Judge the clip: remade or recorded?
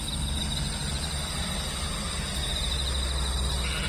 recorded